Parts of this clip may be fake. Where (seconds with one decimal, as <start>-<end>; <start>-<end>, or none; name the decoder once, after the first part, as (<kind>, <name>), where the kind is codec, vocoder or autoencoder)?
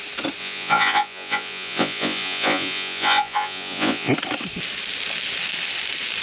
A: 0.4-4.1 (vocoder, Vocos)